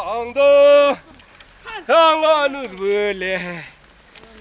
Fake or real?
real